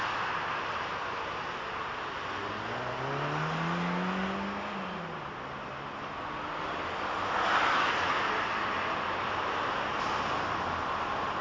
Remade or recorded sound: recorded